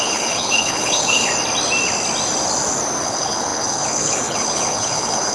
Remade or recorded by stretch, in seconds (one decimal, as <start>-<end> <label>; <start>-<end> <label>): 0.0-1.3 remade; 1.3-3.0 recorded; 3.0-5.3 remade